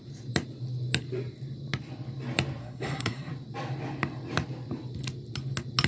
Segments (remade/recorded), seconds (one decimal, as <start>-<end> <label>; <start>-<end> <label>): 0.0-2.6 recorded; 2.6-3.3 remade; 3.3-5.9 recorded